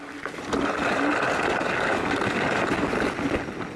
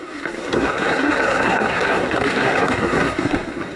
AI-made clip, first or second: second